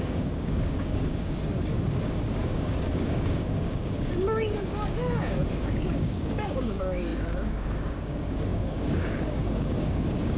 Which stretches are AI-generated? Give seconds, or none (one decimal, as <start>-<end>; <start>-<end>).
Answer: 0.0-10.4